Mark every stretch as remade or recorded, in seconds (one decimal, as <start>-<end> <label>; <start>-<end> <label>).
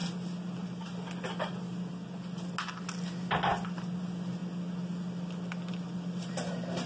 0.0-6.9 recorded